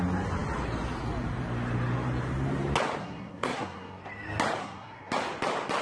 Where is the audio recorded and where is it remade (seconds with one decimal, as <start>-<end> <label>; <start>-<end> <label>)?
0.0-3.0 recorded; 3.0-4.0 remade; 4.0-4.6 recorded; 4.6-5.1 remade; 5.1-5.8 recorded

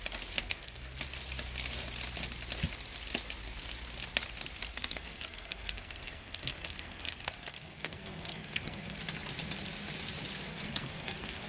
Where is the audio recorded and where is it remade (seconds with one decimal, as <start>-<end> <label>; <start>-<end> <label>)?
0.0-0.4 recorded; 0.4-1.0 remade; 1.0-4.7 recorded; 4.7-9.0 remade; 9.0-10.5 recorded; 10.5-11.5 remade

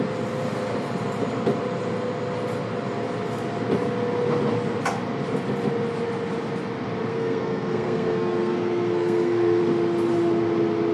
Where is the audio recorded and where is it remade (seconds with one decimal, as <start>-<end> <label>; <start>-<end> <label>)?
0.0-7.1 recorded; 7.1-9.6 remade; 9.6-10.9 recorded

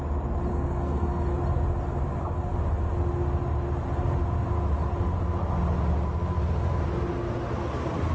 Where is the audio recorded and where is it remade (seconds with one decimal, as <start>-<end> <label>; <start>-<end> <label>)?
0.0-0.5 recorded; 0.5-1.2 remade; 1.2-8.1 recorded